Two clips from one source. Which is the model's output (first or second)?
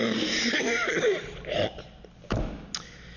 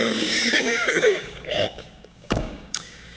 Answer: second